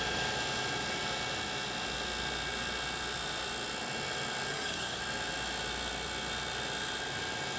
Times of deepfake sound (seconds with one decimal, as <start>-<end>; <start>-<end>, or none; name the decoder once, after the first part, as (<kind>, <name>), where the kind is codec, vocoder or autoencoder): 4.5-5.0 (codec, SNAC)